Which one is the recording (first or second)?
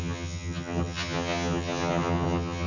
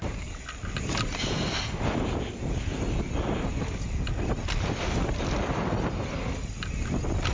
second